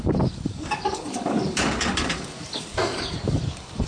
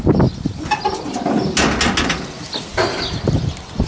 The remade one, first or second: first